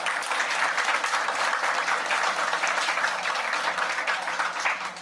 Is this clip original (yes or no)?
yes